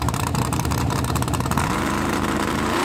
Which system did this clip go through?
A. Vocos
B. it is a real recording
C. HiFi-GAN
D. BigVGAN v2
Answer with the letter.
D